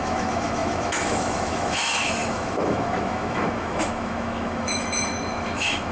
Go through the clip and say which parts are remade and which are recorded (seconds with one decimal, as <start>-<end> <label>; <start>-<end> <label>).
0.0-5.9 remade